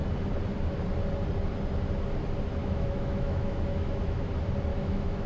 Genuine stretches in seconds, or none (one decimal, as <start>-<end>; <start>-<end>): 0.0-2.6; 4.3-4.7